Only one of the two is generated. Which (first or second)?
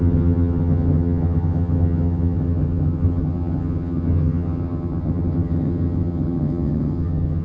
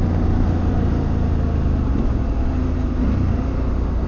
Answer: first